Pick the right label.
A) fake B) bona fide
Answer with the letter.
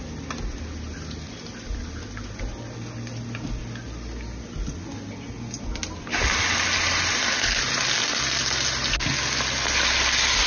B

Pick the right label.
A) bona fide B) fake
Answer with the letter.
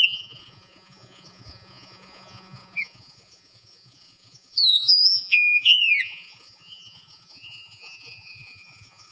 B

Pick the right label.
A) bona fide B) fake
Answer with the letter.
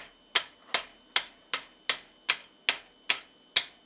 A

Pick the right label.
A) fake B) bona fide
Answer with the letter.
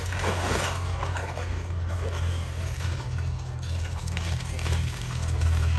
A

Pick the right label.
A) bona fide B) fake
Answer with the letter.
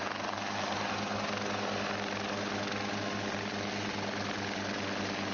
A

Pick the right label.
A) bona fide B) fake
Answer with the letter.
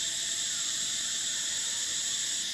B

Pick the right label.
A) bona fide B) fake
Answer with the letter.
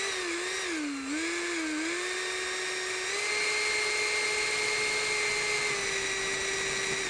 A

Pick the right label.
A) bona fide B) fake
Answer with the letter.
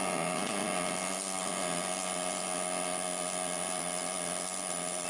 A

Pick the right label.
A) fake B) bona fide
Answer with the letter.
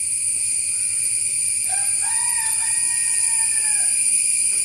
B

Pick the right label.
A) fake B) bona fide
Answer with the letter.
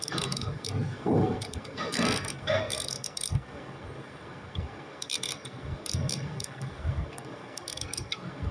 A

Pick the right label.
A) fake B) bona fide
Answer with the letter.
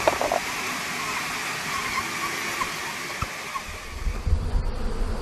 B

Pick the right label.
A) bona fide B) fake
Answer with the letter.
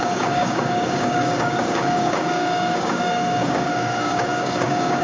B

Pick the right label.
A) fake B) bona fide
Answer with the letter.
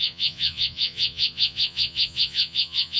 A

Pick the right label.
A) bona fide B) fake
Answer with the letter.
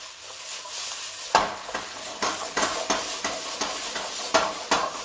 A